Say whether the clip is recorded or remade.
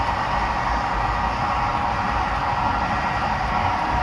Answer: recorded